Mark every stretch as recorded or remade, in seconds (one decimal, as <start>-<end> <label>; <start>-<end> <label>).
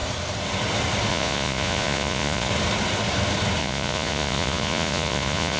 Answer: 0.0-1.1 recorded; 1.1-2.5 remade; 2.5-3.6 recorded; 3.6-5.6 remade